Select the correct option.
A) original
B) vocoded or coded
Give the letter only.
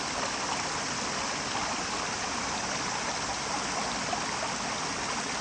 A